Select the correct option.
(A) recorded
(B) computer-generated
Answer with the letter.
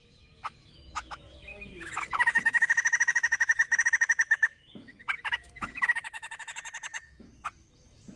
B